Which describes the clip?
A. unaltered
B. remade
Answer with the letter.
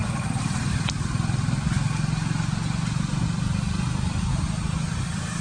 A